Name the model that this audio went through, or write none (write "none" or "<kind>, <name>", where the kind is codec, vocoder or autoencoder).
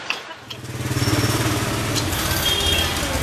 none